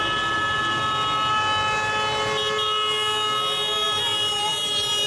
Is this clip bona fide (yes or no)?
yes